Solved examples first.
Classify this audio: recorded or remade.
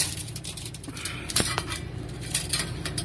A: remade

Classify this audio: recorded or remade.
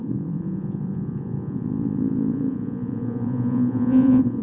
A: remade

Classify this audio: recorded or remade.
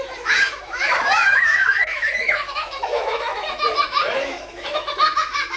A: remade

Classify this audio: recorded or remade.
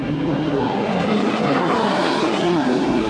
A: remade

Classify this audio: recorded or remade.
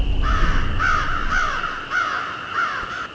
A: recorded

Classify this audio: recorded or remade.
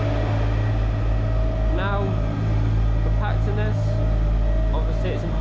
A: recorded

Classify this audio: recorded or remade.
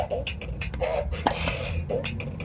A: recorded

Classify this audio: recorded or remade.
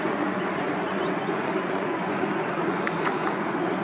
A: remade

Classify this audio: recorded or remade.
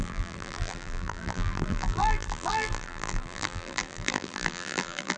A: remade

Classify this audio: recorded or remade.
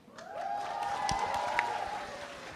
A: recorded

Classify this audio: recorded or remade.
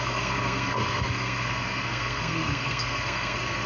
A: remade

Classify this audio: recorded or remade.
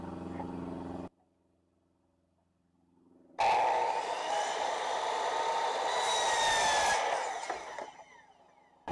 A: recorded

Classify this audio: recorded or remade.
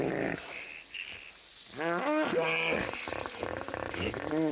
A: recorded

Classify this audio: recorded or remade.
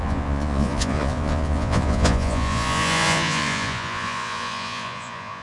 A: remade